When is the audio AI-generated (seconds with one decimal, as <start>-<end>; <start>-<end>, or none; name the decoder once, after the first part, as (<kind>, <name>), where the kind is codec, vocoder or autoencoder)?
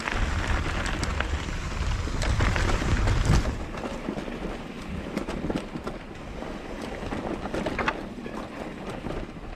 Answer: none